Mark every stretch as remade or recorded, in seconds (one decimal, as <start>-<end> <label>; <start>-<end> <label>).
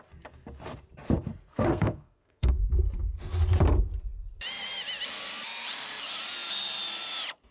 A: 0.0-1.5 recorded; 1.5-2.6 remade; 2.6-7.5 recorded